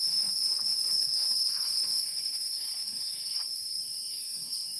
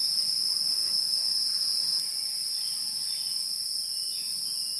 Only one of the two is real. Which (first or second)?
second